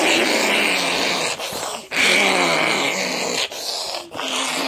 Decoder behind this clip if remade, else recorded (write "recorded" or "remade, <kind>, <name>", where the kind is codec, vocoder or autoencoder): recorded